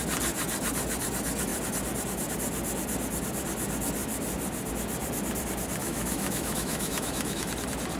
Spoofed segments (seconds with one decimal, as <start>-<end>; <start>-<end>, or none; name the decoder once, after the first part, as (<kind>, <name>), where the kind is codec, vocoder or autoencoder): 5.8-7.5 (autoencoder, DAC-VAE)